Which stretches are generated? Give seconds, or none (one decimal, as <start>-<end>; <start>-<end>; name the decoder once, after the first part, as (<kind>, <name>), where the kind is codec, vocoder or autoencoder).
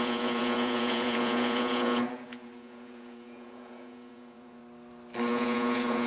0.0-4.6 (vocoder, Vocos); 5.3-6.1